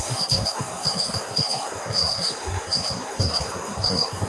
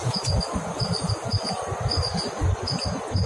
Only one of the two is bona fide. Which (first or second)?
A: second